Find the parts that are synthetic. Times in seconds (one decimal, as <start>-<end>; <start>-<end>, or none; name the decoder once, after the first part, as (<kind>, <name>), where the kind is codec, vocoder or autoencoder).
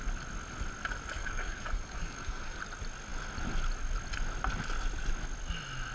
1.2-2.6 (codec, DAC)